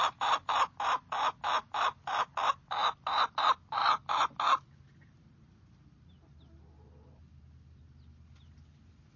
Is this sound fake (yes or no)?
no